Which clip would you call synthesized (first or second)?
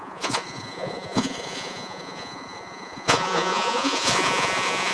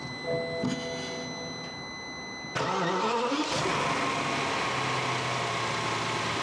first